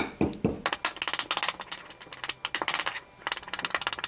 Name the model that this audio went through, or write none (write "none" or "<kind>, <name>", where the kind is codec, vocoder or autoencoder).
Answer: none